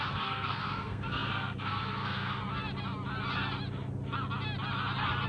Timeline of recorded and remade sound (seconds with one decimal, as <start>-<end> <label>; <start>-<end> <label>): 0.0-2.4 remade; 2.4-5.3 recorded